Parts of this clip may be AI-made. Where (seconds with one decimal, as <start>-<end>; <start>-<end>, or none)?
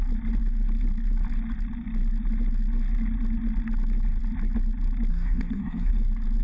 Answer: 5.1-5.9